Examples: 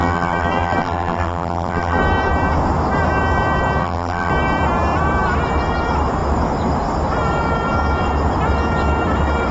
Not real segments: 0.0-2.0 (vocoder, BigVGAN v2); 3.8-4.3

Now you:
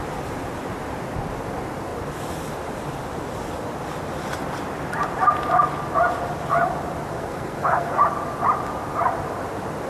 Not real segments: 7.1-8.0 (codec, SNAC)

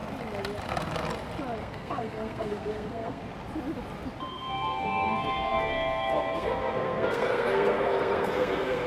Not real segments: 1.6-3.2 (codec, SNAC); 4.3-8.9

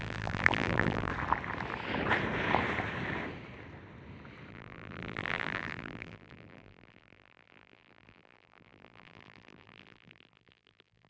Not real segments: 0.0-1.1 (vocoder, BigVGAN v2); 4.5-11.1